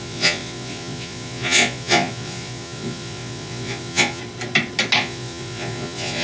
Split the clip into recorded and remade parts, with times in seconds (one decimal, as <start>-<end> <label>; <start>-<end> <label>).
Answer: 0.0-4.2 remade; 4.2-5.0 recorded; 5.0-6.2 remade